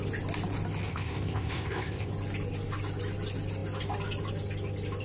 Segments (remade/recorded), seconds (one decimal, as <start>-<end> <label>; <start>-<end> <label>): 0.0-0.9 recorded; 0.9-2.1 remade; 2.1-5.0 recorded